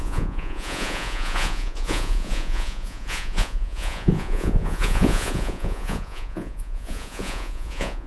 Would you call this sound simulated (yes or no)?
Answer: yes